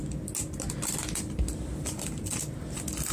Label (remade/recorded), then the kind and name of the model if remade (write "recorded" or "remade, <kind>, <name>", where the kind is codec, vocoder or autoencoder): recorded